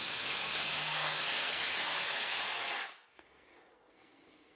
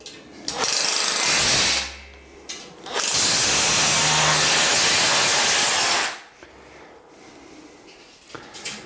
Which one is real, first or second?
second